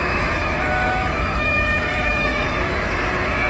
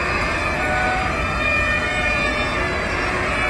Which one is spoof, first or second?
first